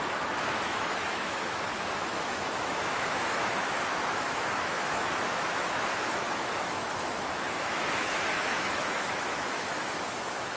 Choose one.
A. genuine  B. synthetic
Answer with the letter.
B